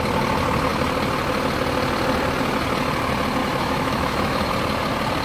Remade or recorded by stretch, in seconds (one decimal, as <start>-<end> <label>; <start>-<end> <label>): 0.0-3.4 recorded; 3.4-4.5 remade; 4.5-5.2 recorded